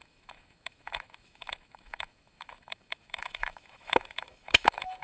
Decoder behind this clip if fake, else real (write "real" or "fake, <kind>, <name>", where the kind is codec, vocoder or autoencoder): fake, autoencoder, DAC-VAE